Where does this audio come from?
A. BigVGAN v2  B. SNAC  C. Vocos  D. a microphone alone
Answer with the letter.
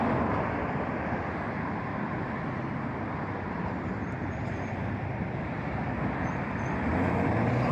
A